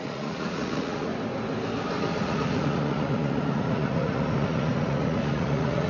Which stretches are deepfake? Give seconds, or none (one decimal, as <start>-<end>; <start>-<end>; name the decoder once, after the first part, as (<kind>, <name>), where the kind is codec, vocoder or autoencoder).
0.0-1.1 (vocoder, Vocos); 2.0-5.9